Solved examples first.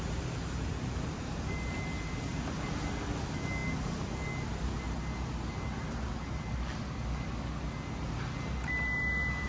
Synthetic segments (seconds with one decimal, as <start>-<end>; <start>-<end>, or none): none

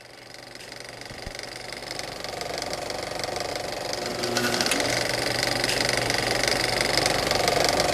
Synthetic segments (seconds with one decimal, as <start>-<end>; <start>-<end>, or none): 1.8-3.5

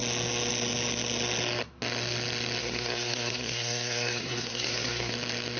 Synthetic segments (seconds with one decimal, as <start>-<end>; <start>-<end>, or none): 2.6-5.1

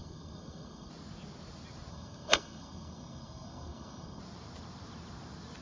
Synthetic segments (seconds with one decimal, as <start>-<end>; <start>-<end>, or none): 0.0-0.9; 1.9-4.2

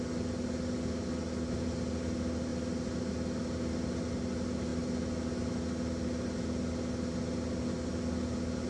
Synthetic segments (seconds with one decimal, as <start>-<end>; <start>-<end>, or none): none

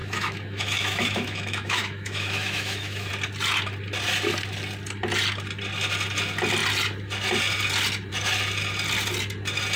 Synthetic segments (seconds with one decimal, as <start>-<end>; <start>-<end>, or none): 0.0-3.1

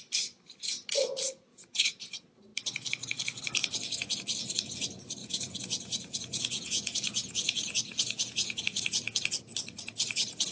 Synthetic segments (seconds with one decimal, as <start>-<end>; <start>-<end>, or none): 1.5-2.0; 5.2-8.6

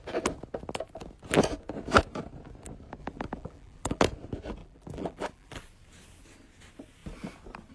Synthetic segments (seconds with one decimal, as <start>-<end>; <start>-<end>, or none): 3.0-4.0; 4.6-5.5